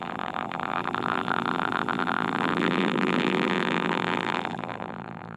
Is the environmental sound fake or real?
fake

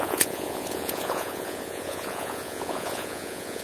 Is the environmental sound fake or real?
fake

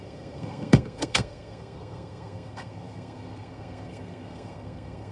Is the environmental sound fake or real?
fake